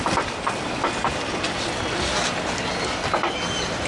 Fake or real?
real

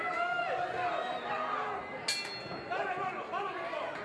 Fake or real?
real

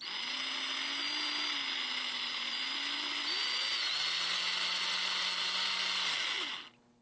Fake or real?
real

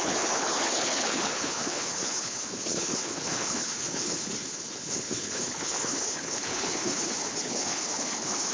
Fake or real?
fake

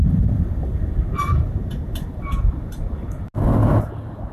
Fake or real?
real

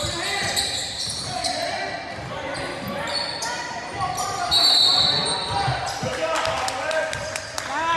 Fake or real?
real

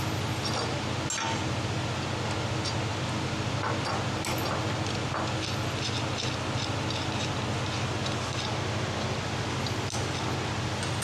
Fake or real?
real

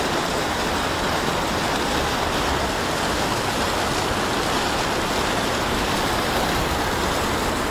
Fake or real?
real